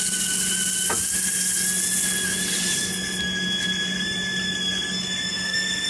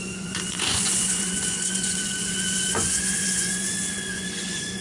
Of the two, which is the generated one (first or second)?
second